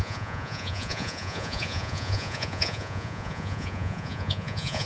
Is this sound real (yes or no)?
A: no